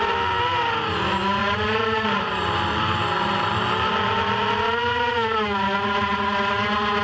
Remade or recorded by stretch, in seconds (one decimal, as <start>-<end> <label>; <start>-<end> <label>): 0.0-1.4 recorded; 1.4-3.9 remade; 3.9-7.0 recorded